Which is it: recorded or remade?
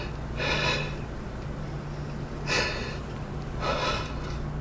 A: recorded